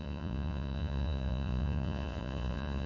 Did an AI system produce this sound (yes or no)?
yes